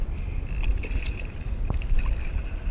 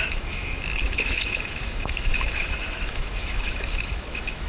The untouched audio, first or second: first